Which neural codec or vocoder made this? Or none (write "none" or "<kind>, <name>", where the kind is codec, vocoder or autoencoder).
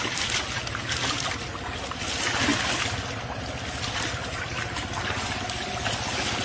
none